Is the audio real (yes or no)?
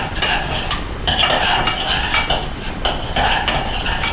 yes